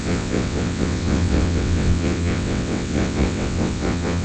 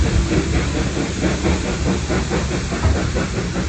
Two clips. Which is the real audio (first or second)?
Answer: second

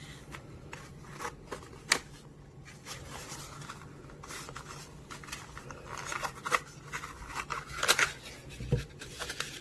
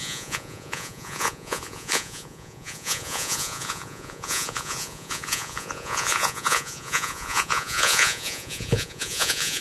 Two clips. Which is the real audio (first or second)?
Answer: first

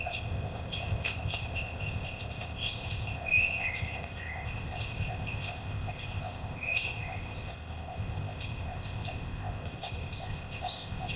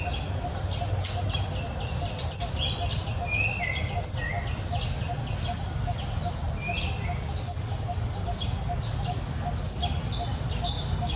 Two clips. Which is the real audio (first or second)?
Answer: second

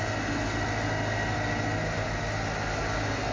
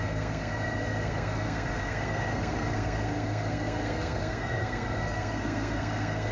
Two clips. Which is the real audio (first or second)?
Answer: first